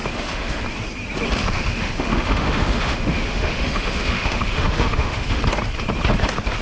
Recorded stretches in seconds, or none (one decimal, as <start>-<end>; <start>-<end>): 0.6-1.4; 5.4-6.6